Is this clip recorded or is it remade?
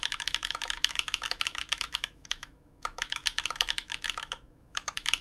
remade